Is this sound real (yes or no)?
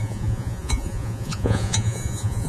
no